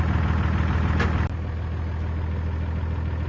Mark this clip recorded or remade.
recorded